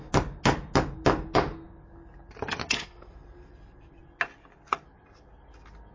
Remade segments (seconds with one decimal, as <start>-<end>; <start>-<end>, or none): 2.6-3.1